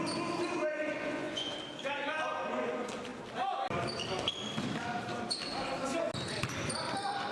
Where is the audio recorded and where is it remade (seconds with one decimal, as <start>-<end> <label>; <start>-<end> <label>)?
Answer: 0.0-1.0 recorded; 1.0-1.5 remade; 1.5-7.3 recorded